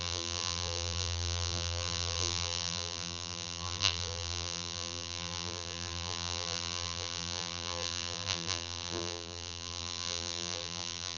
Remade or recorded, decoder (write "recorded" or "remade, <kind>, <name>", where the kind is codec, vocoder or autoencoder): remade, vocoder, BigVGAN v2